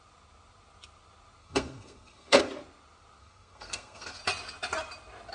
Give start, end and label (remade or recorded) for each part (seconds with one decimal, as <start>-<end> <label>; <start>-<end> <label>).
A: 0.0-1.4 recorded; 1.4-2.4 remade; 2.4-3.2 recorded; 3.2-4.2 remade; 4.2-5.3 recorded